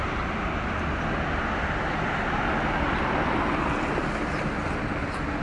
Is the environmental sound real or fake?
real